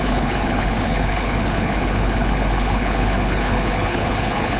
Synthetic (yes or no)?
yes